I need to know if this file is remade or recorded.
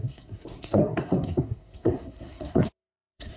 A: remade